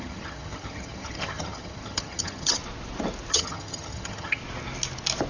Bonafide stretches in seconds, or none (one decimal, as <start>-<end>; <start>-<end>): 2.6-3.3; 4.4-5.3